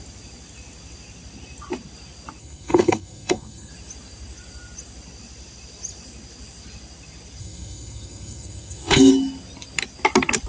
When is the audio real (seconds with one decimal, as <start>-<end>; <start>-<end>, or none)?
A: 0.0-2.4; 3.7-7.4; 9.1-10.5